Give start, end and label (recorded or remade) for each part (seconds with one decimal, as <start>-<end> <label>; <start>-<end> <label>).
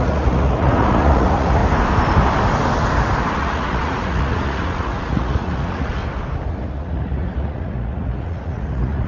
0.0-1.6 remade; 1.6-3.3 recorded; 3.3-6.0 remade; 6.0-6.5 recorded; 6.5-9.1 remade